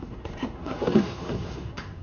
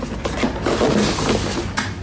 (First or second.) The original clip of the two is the second